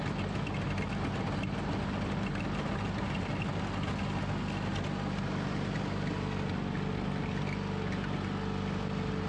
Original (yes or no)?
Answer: yes